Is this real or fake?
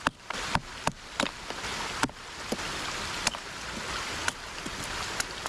real